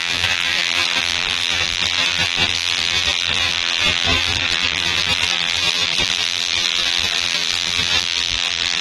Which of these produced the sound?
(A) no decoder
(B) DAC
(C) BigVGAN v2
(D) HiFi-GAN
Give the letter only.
C